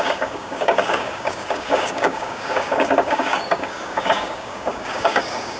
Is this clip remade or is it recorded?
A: remade